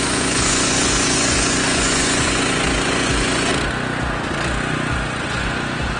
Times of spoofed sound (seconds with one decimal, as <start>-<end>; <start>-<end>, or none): 0.0-3.5; 4.9-6.0